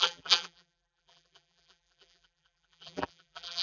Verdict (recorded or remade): remade